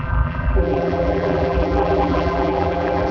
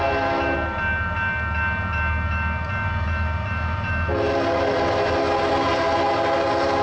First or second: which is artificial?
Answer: first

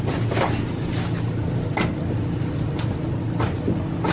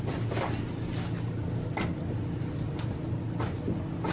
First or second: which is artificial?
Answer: first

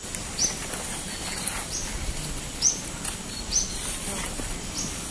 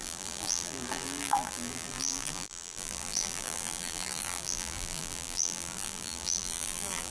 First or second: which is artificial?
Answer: second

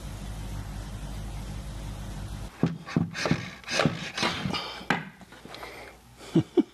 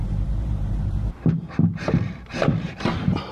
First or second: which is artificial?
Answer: second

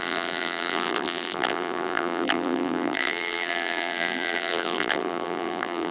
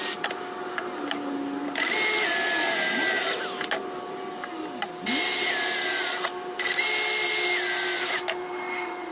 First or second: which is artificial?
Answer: first